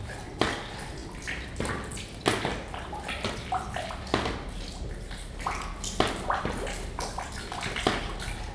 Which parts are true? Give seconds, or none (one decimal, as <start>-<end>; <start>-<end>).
0.0-8.5